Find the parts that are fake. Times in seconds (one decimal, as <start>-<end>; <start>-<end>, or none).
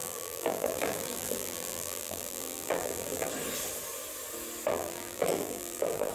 0.0-3.3; 4.7-6.1